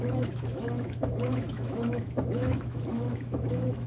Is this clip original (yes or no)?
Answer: no